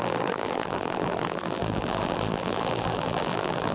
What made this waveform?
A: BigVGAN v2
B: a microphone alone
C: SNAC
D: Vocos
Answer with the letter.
A